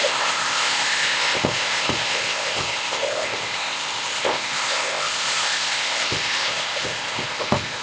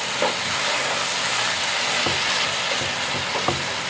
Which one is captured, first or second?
second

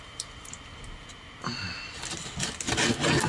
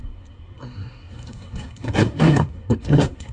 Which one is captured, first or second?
first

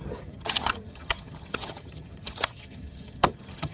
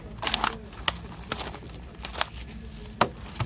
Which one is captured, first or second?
second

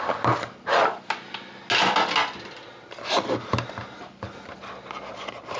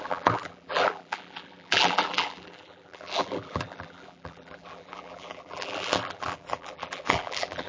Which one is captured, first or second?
first